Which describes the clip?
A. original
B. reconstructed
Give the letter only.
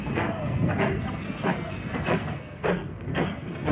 B